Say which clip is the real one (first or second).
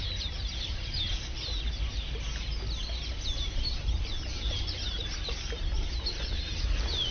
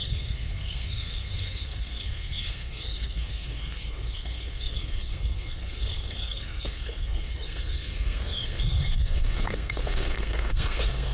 first